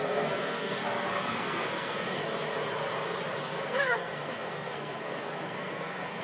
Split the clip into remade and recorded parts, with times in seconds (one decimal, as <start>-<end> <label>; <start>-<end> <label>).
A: 0.0-2.2 remade; 2.2-3.4 recorded; 3.4-6.2 remade